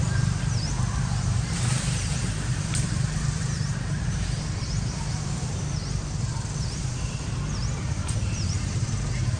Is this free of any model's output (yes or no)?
no